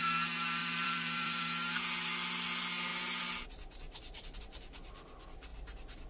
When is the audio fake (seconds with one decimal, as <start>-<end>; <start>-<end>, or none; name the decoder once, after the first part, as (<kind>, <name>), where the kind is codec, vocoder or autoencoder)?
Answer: 0.6-1.4 (vocoder, BigVGAN v2)